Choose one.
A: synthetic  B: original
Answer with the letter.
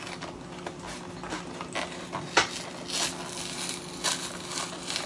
B